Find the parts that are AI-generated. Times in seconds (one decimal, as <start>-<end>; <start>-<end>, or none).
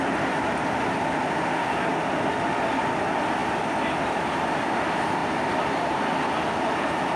5.2-6.0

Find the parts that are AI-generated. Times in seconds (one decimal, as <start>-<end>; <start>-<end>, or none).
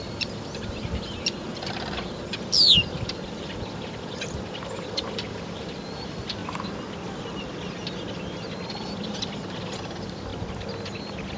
0.0-6.4; 8.7-10.3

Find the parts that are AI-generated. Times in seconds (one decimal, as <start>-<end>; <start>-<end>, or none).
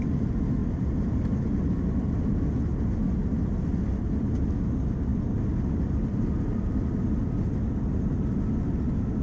0.6-1.2; 3.3-3.9; 5.1-6.8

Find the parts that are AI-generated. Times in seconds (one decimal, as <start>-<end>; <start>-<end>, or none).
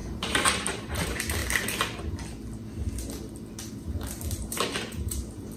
0.0-1.4; 3.7-5.6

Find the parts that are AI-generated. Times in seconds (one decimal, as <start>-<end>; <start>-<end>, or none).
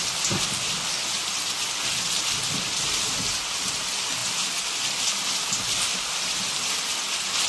0.0-7.5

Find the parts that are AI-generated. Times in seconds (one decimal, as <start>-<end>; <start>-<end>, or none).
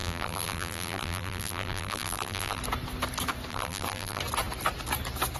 0.0-2.6; 3.5-4.2